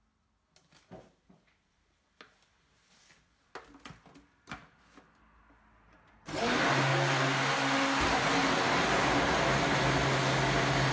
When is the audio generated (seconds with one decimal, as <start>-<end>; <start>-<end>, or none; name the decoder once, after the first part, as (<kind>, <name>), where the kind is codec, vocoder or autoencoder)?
none